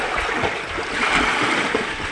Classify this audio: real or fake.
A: real